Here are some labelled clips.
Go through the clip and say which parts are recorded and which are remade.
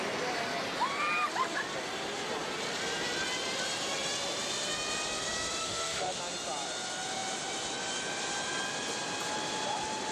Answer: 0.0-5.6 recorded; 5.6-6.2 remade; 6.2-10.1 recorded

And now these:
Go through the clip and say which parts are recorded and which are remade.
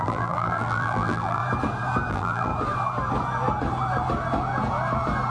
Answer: 0.0-1.4 remade; 1.4-2.1 recorded; 2.1-2.5 remade; 2.5-5.3 recorded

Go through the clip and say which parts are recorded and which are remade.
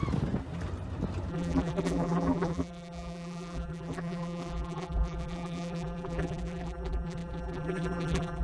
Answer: 0.0-1.3 recorded; 1.3-8.4 remade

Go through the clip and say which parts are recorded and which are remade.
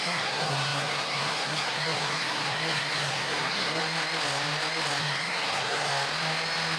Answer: 0.0-3.8 remade; 3.8-5.0 recorded; 5.0-5.9 remade; 5.9-6.8 recorded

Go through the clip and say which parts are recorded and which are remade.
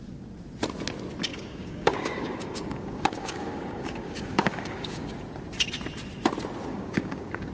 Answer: 0.0-1.3 recorded; 1.3-5.1 remade; 5.1-6.7 recorded; 6.7-7.5 remade